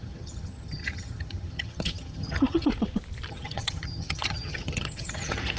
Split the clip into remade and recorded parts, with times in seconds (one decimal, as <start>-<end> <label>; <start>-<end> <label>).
0.0-2.7 remade; 2.7-3.3 recorded; 3.3-5.6 remade